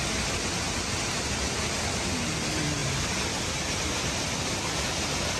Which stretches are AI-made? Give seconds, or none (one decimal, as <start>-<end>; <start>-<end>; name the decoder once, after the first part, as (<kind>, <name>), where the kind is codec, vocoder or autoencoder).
none